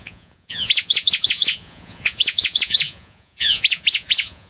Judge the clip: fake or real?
fake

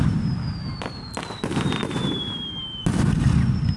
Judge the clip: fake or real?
real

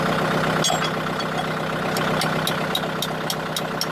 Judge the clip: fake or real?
real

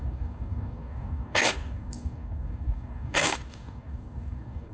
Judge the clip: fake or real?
fake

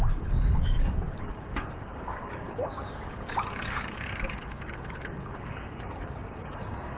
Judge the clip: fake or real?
fake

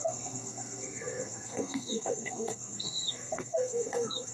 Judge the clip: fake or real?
fake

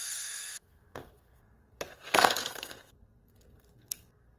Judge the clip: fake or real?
fake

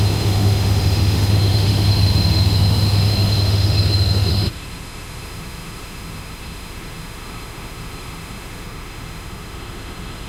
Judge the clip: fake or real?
fake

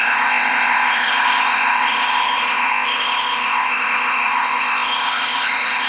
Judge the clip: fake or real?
fake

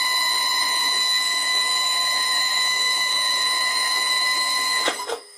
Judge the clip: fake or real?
fake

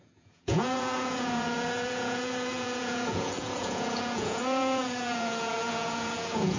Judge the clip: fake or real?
fake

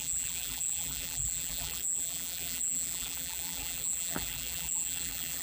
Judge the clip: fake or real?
fake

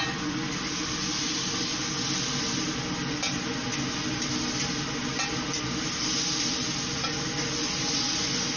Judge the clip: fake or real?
real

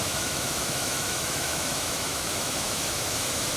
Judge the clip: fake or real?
fake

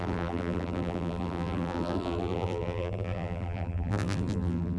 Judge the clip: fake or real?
fake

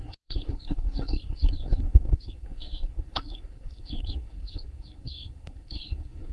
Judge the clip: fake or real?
fake